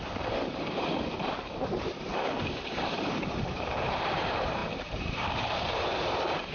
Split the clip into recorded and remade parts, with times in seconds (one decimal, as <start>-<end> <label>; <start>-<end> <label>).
0.0-2.1 remade; 2.1-3.4 recorded; 3.4-6.5 remade